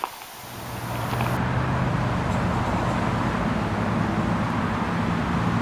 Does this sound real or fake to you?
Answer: real